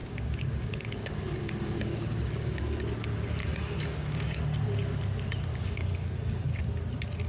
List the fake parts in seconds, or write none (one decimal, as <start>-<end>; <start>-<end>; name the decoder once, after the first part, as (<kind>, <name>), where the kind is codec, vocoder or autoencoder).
0.0-2.6 (codec, DAC); 3.4-4.4; 5.5-6.4